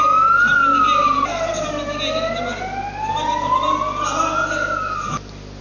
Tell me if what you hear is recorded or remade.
recorded